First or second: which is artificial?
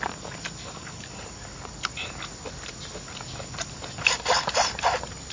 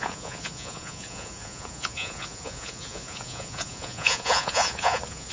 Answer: second